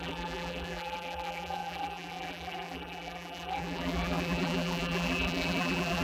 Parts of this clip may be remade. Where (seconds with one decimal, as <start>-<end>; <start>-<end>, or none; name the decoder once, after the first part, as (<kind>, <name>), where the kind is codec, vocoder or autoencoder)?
0.0-6.0 (vocoder, BigVGAN v2)